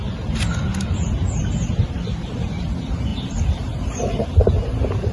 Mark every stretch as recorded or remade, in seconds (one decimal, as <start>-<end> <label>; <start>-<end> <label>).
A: 0.0-0.7 recorded; 0.7-1.7 remade; 1.7-3.1 recorded; 3.1-4.4 remade; 4.4-5.1 recorded